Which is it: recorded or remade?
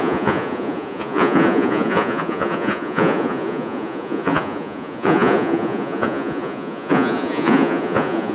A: remade